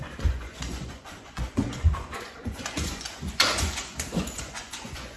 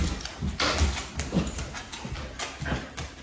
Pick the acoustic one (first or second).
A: second